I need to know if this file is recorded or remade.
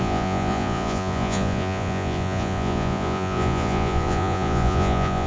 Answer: remade